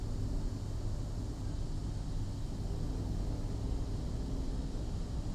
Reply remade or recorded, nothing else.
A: recorded